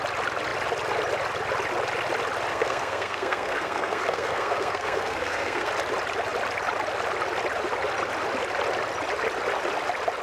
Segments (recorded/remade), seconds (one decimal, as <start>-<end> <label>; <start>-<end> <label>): 0.0-2.5 recorded; 2.5-5.7 remade; 5.7-10.2 recorded